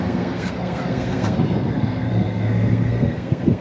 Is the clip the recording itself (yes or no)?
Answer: no